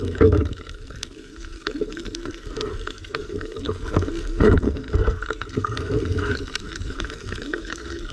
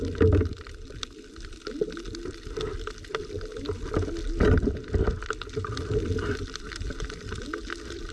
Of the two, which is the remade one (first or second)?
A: first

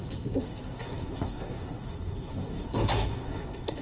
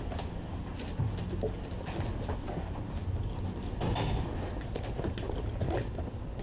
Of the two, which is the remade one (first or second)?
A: first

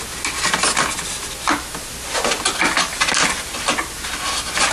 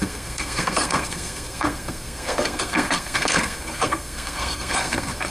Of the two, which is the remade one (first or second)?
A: second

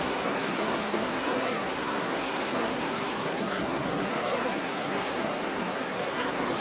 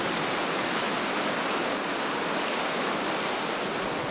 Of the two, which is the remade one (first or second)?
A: first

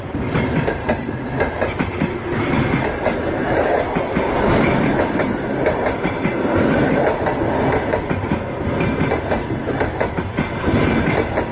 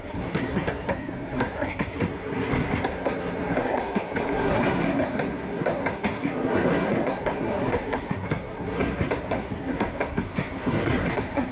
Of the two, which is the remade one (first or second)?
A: second